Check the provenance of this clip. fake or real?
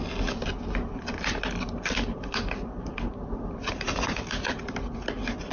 real